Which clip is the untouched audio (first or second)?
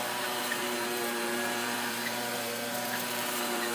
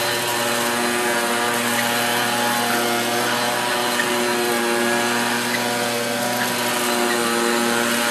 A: second